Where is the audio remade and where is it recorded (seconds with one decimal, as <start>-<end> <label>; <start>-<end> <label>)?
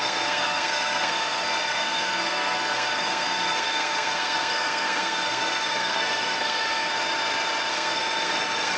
0.0-6.9 remade; 6.9-7.7 recorded; 7.7-8.8 remade